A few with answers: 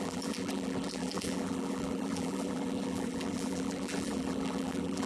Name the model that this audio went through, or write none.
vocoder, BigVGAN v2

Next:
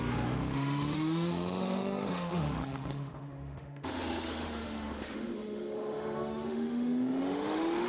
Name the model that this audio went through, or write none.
autoencoder, DAC-VAE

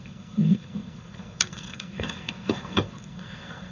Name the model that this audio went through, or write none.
codec, SNAC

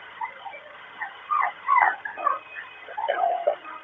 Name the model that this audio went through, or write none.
vocoder, HiFi-GAN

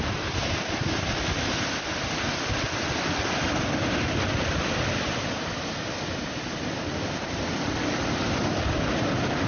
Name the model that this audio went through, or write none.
none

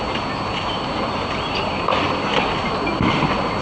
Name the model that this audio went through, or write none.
none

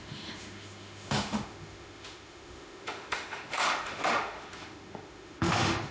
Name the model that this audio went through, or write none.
autoencoder, DAC-VAE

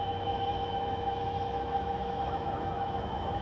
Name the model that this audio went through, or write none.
autoencoder, DAC-VAE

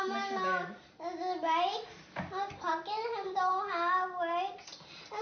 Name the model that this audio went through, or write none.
none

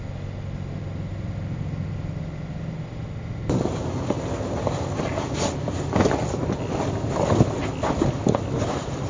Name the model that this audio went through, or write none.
none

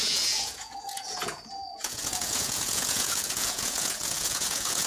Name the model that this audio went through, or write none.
vocoder, Vocos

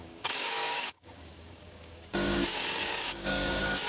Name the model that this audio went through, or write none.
codec, DAC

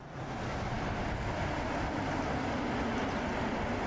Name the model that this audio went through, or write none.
none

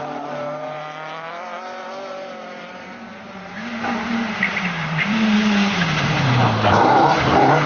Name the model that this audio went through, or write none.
vocoder, BigVGAN v2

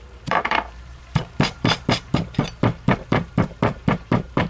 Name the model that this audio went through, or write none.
vocoder, BigVGAN v2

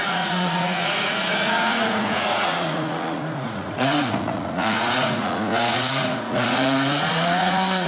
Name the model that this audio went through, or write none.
vocoder, Vocos